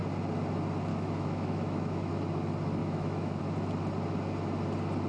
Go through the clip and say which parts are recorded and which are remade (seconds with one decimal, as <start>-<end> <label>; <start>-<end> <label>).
0.0-0.9 recorded; 0.9-2.1 remade; 2.1-2.8 recorded; 2.8-3.4 remade; 3.4-5.1 recorded